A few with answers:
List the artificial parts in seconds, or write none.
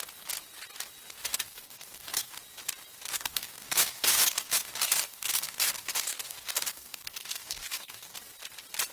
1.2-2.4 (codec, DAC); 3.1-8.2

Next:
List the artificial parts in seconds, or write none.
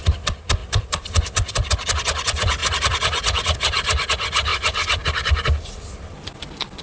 0.6-1.7 (vocoder, BigVGAN v2)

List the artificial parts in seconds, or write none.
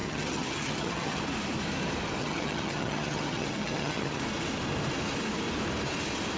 0.0-1.2 (vocoder, HiFi-GAN); 2.2-4.2